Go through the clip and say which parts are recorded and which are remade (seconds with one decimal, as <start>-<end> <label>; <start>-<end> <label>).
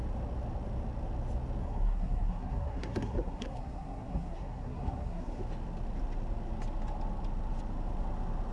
0.0-1.6 recorded; 1.6-5.4 remade; 5.4-8.5 recorded